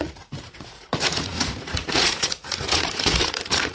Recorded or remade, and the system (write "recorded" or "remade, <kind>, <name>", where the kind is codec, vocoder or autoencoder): remade, vocoder, Vocos